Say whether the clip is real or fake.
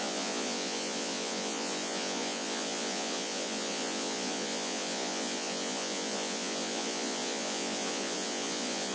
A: fake